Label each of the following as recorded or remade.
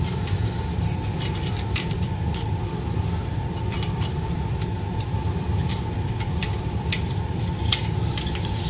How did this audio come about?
remade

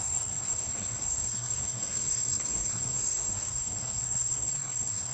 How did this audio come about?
remade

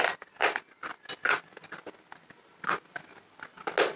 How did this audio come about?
recorded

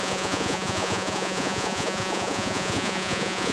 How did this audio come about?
remade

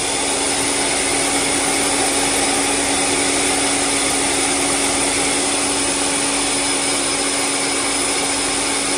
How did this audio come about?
recorded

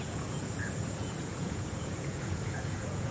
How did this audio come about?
remade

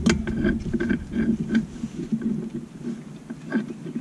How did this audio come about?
recorded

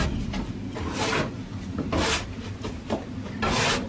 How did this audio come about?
recorded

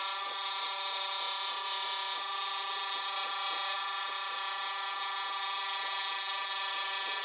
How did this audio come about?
recorded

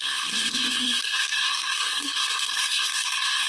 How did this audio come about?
remade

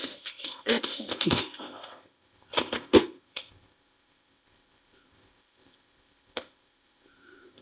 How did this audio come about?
remade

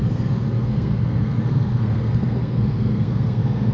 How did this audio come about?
remade